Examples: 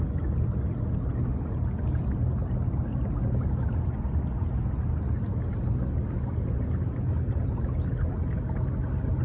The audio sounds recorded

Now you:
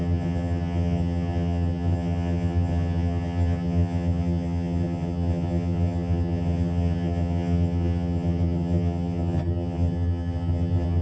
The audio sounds remade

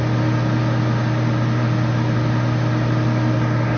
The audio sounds recorded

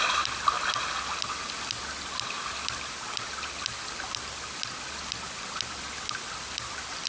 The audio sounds recorded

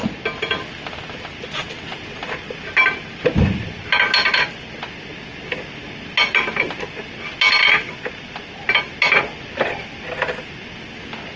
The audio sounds recorded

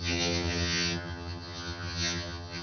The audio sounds remade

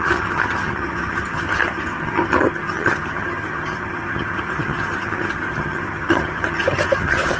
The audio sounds remade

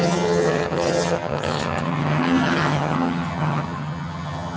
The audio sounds remade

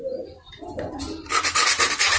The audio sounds recorded